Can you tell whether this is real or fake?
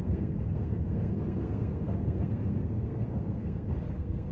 fake